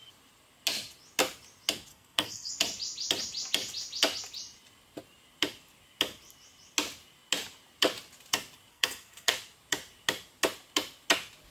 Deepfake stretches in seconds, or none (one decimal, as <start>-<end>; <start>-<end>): 1.9-2.5; 8.7-9.3